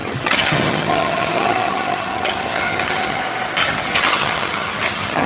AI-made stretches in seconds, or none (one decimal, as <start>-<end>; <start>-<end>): 0.0-3.2; 3.6-5.3